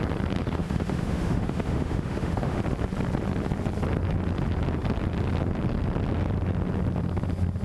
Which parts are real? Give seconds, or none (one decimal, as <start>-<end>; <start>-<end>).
0.0-0.4; 2.6-7.6